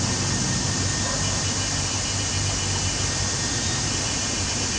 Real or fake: real